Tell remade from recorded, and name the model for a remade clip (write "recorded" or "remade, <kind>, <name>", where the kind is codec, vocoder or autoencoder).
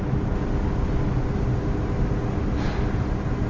recorded